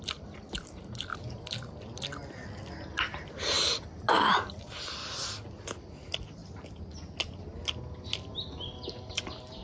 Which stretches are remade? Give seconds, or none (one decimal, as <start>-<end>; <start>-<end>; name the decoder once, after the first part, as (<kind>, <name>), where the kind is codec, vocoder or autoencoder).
0.0-1.1 (vocoder, BigVGAN v2); 4.1-5.0; 5.9-6.4; 9.0-9.6